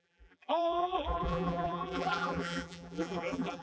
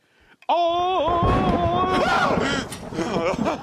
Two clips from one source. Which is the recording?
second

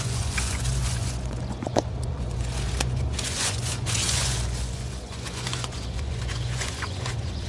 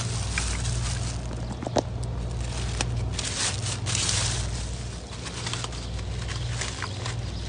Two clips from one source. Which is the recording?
second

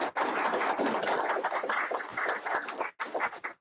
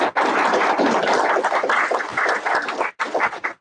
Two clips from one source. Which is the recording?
first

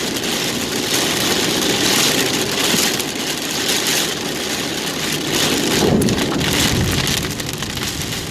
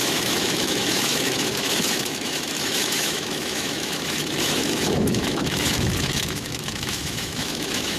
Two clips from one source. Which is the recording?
first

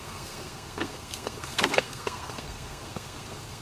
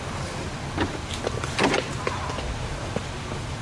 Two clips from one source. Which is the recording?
second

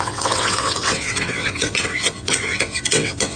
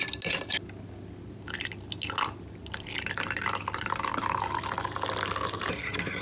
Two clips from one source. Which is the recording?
second